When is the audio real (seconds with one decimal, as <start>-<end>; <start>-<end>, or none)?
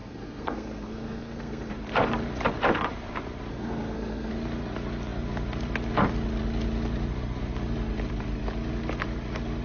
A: 1.7-3.5; 4.3-9.6